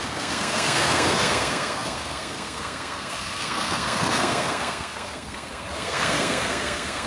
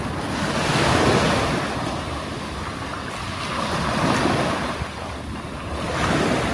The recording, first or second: second